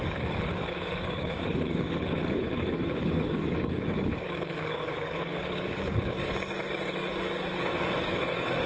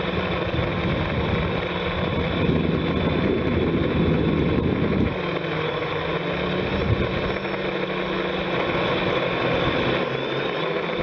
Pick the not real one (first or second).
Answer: first